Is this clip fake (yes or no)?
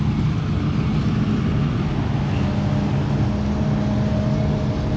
no